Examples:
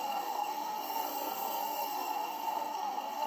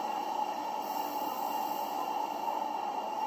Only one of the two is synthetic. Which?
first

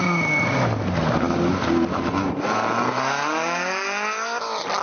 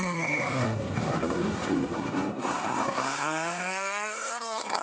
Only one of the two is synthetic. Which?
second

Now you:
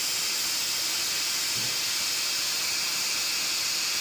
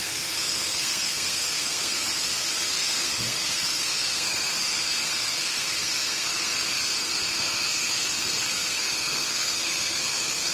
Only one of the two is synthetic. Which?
second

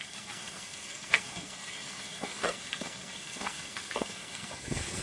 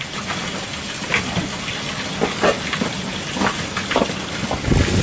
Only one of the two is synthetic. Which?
first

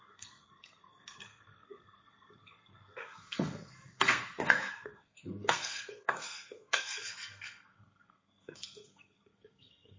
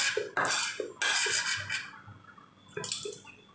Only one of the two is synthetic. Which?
first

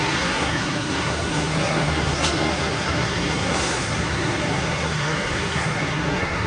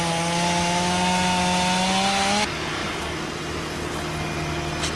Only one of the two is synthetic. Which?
first